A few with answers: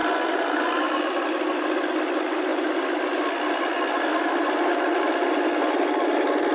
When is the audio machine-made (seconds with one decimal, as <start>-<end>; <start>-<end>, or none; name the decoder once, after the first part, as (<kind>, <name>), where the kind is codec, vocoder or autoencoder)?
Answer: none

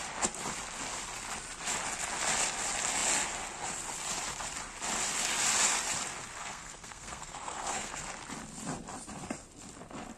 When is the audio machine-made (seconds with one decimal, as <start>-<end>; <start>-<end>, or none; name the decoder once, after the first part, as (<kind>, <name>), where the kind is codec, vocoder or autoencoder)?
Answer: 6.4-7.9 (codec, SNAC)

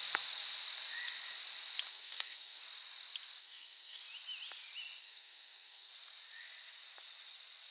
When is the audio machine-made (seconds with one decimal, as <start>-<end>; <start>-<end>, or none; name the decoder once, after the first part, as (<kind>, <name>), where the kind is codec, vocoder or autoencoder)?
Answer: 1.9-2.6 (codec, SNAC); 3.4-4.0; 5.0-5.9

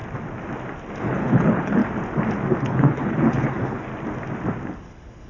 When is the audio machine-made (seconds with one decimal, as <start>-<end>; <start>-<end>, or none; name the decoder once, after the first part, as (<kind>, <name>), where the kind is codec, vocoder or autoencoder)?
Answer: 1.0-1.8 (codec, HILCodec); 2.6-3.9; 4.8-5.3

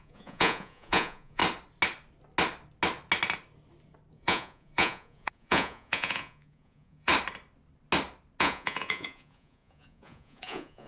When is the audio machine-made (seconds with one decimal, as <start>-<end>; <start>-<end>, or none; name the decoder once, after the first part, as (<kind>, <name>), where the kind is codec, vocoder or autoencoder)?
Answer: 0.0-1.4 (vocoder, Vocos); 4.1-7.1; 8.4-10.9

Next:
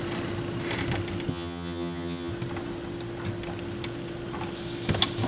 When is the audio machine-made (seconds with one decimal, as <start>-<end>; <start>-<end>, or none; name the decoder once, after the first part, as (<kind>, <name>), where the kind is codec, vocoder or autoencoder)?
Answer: 1.3-2.3 (vocoder, HiFi-GAN)